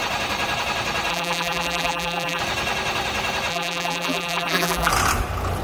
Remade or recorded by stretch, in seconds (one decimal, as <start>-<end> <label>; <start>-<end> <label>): 0.0-1.1 recorded; 1.1-2.4 remade; 2.4-3.5 recorded; 3.5-4.9 remade; 4.9-5.6 recorded